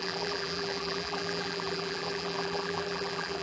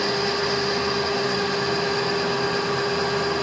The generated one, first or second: first